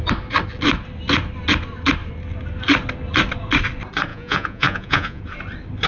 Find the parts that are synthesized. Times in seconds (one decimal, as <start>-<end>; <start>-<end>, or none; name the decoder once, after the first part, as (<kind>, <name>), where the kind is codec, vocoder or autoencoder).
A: 4.1-5.2 (vocoder, Vocos)